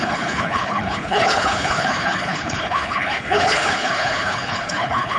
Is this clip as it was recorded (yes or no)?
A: no